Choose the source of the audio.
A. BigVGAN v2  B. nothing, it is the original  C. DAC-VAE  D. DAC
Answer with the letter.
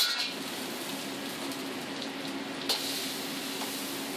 B